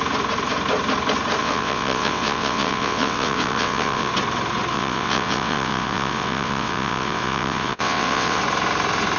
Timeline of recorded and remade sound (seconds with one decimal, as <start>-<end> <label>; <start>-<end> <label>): 0.0-1.4 recorded; 1.4-4.1 remade; 4.1-4.7 recorded; 4.7-8.4 remade; 8.4-9.2 recorded